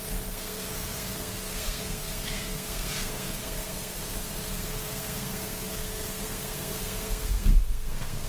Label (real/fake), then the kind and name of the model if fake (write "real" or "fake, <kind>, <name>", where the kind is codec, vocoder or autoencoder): fake, codec, SNAC